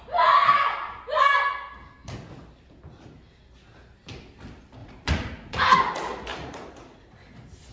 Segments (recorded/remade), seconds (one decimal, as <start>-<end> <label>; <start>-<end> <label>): 0.0-4.8 recorded; 4.8-5.8 remade; 5.8-6.3 recorded; 6.3-7.2 remade; 7.2-7.7 recorded

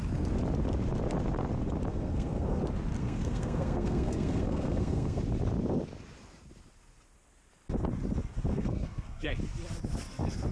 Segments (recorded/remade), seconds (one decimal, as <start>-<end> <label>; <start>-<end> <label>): 0.0-1.9 recorded; 1.9-2.6 remade; 2.6-3.0 recorded; 3.0-5.2 remade; 5.2-8.5 recorded; 8.5-9.3 remade; 9.3-10.5 recorded

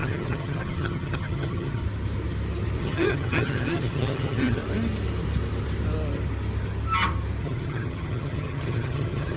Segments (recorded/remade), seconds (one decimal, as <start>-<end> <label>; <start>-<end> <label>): 0.0-1.8 remade; 1.8-2.8 recorded; 2.8-4.6 remade; 4.6-7.4 recorded; 7.4-9.4 remade

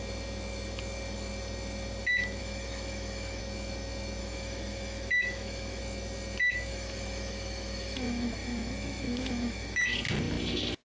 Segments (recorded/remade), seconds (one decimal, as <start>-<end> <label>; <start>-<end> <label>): 0.0-2.4 recorded; 2.4-3.4 remade; 3.4-4.2 recorded; 4.2-5.8 remade; 5.8-6.7 recorded; 6.7-9.9 remade; 9.9-10.9 recorded